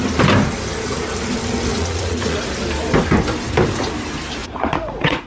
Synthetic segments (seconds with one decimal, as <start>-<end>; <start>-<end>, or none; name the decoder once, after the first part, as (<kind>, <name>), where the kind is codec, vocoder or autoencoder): 1.7-2.5 (vocoder, Vocos); 4.4-5.3